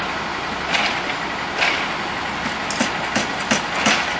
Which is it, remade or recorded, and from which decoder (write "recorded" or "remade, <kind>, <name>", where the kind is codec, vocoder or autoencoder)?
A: recorded